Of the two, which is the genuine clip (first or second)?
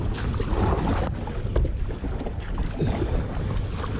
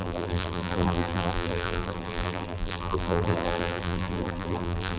first